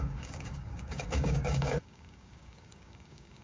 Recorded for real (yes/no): no